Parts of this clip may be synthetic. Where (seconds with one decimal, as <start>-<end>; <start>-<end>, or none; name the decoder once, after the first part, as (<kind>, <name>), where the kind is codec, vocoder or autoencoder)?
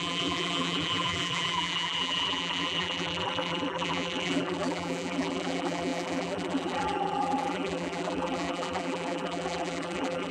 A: 0.0-10.3 (vocoder, BigVGAN v2)